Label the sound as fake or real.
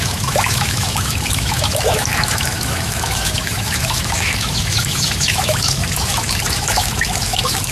fake